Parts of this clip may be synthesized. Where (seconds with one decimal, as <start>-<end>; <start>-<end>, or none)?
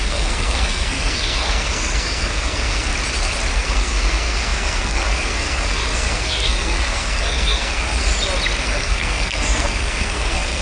0.0-2.9; 3.5-8.1; 8.6-10.6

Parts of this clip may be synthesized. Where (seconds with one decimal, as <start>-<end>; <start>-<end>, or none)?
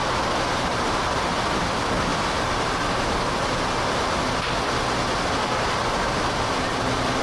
0.0-2.1; 5.5-7.2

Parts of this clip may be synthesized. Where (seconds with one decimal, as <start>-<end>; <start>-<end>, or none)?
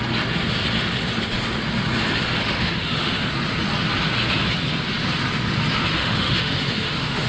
2.4-3.3; 6.0-7.3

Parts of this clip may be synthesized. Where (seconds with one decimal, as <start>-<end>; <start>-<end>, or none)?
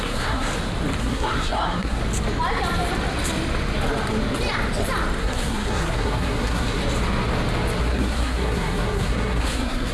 0.0-0.5; 1.0-2.0; 5.2-6.8; 7.8-9.9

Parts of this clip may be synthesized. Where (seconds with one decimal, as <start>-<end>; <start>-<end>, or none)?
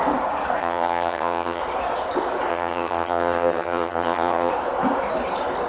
0.6-1.6; 2.5-4.5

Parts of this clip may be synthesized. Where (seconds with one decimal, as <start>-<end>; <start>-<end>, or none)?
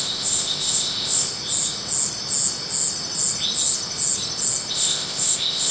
0.0-1.3; 4.7-5.7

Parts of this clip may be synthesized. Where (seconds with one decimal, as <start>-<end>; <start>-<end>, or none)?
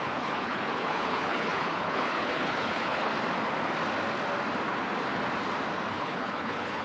0.0-3.1; 5.9-6.8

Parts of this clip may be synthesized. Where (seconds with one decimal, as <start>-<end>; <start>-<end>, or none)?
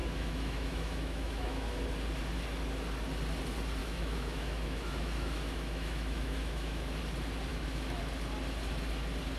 0.0-1.8; 3.8-7.0; 7.5-8.0